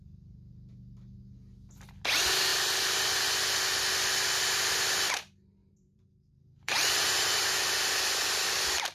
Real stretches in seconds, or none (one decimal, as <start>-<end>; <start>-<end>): 0.0-5.6; 7.5-8.9